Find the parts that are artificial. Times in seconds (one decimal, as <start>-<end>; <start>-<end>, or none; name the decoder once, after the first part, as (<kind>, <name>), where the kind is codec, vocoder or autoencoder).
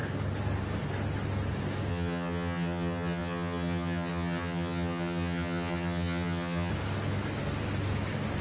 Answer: 1.9-6.7 (vocoder, HiFi-GAN)